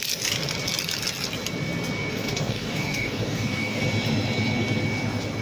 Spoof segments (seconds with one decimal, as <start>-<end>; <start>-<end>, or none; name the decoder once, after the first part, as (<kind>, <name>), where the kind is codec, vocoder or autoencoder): 2.1-3.8 (codec, DAC)